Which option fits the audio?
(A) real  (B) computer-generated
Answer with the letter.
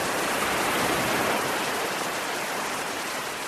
B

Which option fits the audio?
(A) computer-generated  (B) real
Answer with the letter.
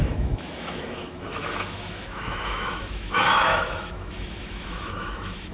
A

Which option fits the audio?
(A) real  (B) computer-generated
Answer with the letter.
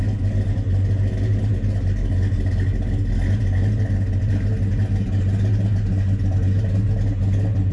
A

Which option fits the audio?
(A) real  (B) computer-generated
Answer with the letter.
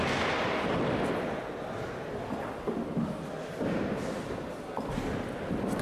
A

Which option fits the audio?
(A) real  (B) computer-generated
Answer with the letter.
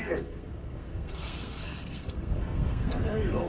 B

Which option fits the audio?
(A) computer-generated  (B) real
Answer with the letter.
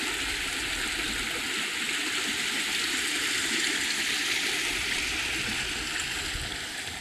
B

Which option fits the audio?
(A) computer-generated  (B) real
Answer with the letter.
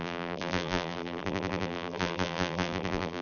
A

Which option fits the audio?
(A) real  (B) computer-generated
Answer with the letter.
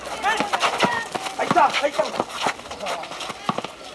A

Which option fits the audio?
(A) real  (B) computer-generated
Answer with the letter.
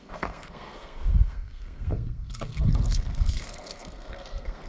B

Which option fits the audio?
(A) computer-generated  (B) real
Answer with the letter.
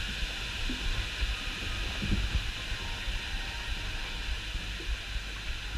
B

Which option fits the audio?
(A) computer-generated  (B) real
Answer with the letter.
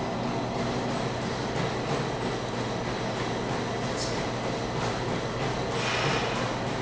B